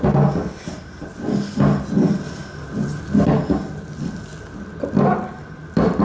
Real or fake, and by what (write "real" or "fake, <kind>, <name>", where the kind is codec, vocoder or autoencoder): real